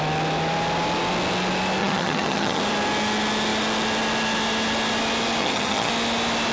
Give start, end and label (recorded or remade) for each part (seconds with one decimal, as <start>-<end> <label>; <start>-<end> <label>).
0.0-1.8 recorded; 1.8-2.6 remade; 2.6-5.4 recorded; 5.4-5.9 remade; 5.9-6.5 recorded